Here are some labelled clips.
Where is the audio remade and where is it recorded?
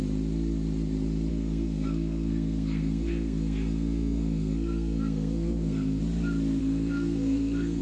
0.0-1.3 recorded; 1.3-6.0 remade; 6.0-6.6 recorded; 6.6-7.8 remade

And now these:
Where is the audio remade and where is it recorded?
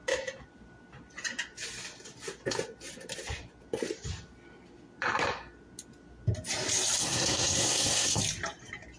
0.0-7.0 recorded; 7.0-8.2 remade; 8.2-9.0 recorded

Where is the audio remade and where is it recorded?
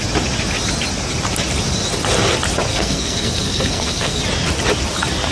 0.0-2.7 recorded; 2.7-4.2 remade; 4.2-5.3 recorded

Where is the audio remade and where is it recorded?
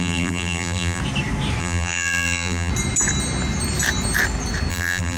0.0-1.0 remade; 1.0-1.6 recorded; 1.6-2.7 remade; 2.7-4.7 recorded; 4.7-5.2 remade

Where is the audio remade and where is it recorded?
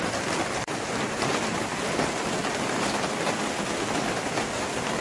0.0-5.0 recorded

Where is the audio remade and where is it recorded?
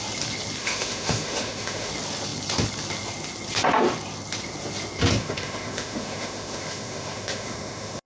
0.0-0.6 recorded; 0.6-1.9 remade; 1.9-5.2 recorded; 5.2-8.1 remade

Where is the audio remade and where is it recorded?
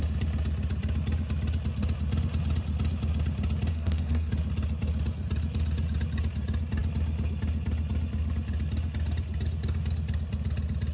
0.0-3.7 recorded; 3.7-4.3 remade; 4.3-10.9 recorded